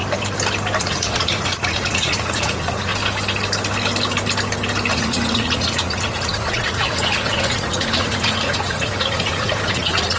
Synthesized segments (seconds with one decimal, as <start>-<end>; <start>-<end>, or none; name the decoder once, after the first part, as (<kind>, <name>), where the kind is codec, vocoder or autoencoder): 0.8-2.9 (vocoder, Vocos); 4.9-10.2